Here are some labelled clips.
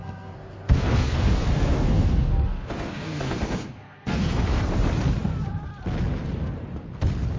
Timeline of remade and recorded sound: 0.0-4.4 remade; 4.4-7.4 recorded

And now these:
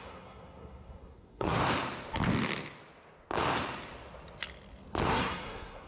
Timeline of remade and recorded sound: 0.0-1.6 remade; 1.6-5.1 recorded; 5.1-5.9 remade